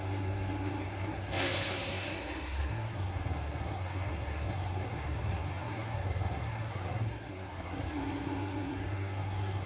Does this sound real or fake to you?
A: fake